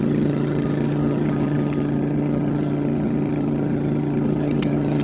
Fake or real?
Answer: fake